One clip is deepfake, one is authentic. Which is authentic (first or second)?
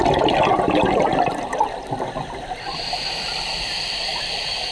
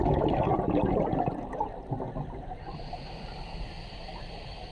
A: second